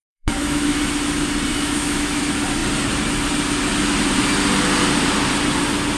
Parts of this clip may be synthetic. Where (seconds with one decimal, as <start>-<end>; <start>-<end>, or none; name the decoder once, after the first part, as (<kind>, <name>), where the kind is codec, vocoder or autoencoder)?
0.0-0.8 (autoencoder, DAC-VAE); 1.5-2.2